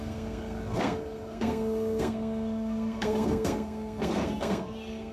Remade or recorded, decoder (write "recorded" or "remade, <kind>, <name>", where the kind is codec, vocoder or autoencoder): remade, codec, SNAC